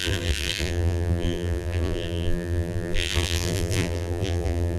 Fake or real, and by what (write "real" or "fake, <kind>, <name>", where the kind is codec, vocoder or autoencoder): fake, vocoder, BigVGAN v2